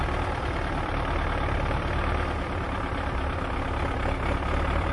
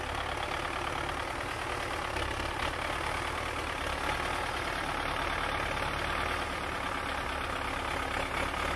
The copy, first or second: first